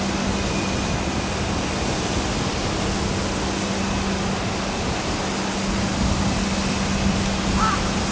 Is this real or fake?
real